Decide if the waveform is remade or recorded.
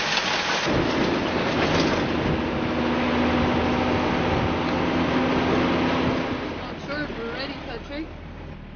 recorded